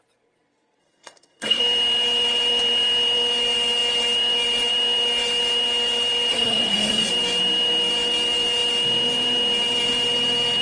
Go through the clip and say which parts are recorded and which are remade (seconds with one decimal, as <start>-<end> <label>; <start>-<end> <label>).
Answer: 0.0-0.8 recorded; 0.8-1.6 remade; 1.6-6.3 recorded; 6.3-7.1 remade; 7.1-10.6 recorded

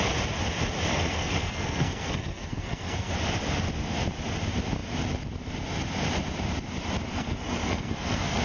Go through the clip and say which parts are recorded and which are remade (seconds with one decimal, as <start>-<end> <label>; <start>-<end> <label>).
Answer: 0.0-0.9 recorded; 0.9-3.1 remade; 3.1-7.1 recorded; 7.1-8.4 remade

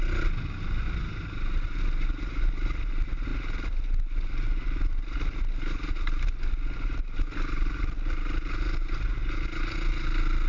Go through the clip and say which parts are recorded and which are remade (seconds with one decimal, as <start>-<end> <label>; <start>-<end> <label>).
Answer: 0.0-10.5 recorded

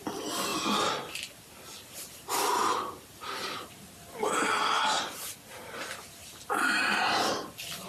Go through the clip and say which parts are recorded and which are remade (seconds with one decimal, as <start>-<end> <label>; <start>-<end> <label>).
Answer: 0.0-7.9 recorded

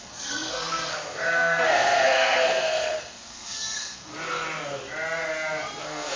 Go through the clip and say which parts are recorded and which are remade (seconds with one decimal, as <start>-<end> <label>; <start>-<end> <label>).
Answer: 0.0-4.1 remade; 4.1-5.8 recorded; 5.8-6.2 remade

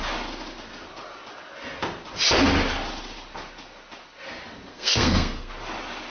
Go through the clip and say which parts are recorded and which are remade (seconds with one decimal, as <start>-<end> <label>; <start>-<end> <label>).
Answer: 0.0-4.7 recorded; 4.7-5.5 remade; 5.5-6.1 recorded